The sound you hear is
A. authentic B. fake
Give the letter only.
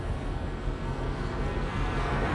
B